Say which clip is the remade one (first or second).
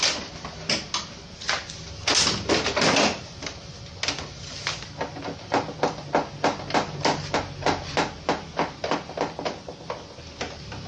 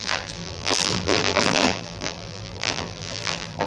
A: second